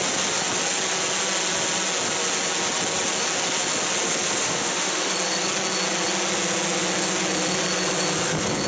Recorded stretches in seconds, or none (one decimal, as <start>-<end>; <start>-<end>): 0.0-4.4; 5.1-8.7